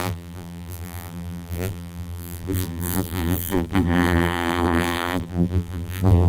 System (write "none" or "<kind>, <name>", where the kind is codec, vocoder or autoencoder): vocoder, BigVGAN v2